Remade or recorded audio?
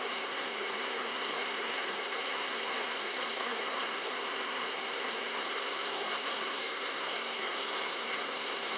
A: remade